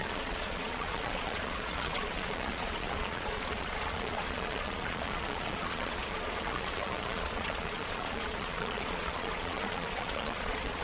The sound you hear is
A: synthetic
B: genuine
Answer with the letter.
A